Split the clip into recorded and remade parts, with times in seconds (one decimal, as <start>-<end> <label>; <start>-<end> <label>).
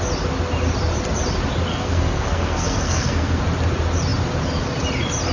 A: 0.0-1.7 recorded; 1.7-3.4 remade; 3.4-5.3 recorded